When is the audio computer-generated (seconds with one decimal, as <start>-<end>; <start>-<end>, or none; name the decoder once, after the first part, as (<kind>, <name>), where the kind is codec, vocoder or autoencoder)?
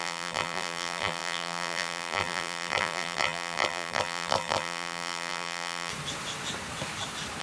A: 0.0-5.9 (vocoder, BigVGAN v2)